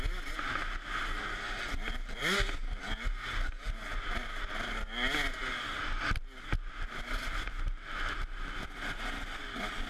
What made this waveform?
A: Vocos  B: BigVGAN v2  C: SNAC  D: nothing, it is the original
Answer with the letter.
D